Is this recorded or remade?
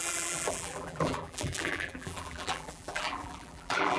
remade